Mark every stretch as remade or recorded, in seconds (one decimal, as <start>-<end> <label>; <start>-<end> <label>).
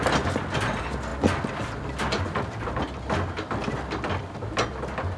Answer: 0.0-5.2 recorded